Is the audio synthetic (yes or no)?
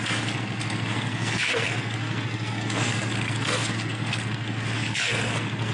yes